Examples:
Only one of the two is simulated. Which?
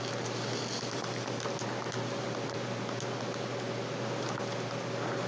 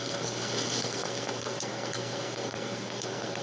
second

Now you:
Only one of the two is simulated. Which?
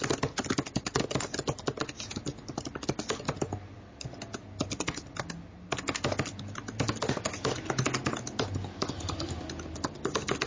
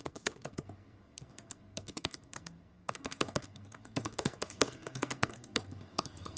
second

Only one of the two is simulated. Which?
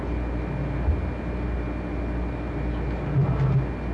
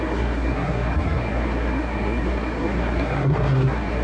second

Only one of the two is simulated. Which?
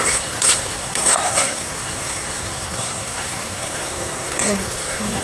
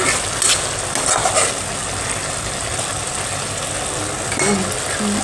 first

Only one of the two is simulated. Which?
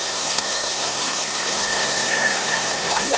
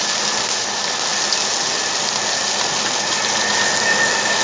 first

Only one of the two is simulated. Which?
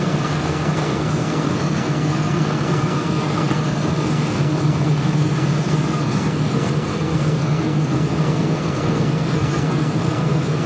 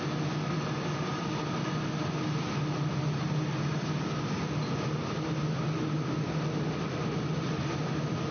first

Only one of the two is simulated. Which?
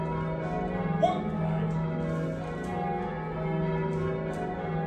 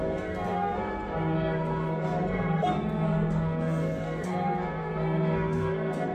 second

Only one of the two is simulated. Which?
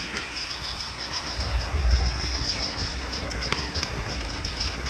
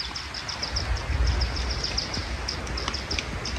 first